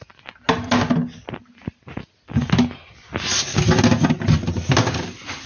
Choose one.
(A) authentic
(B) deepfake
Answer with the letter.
A